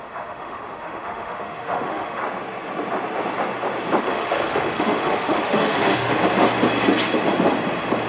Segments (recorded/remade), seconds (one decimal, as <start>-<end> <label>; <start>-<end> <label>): 0.0-2.2 remade; 2.2-4.0 recorded; 4.0-6.2 remade; 6.2-8.1 recorded